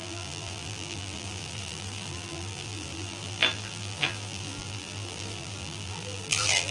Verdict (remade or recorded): remade